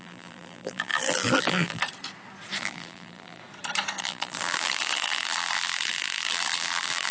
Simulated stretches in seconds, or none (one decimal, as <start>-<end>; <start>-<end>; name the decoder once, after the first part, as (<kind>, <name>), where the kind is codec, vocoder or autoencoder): 0.0-1.8 (vocoder, BigVGAN v2); 2.6-3.4; 4.0-7.1